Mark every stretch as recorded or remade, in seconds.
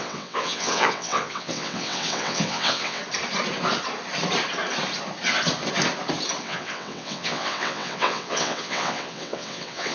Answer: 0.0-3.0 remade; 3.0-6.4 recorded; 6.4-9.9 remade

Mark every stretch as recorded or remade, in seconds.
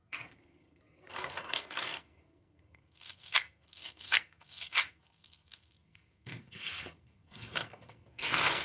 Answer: 0.0-8.6 remade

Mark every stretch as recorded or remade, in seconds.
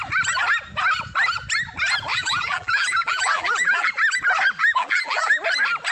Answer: 0.0-2.1 recorded; 2.1-3.9 remade; 3.9-4.6 recorded; 4.6-5.4 remade; 5.4-5.9 recorded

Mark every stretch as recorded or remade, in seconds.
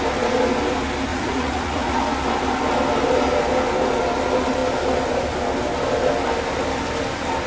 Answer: 0.0-1.1 recorded; 1.1-2.0 remade; 2.0-7.5 recorded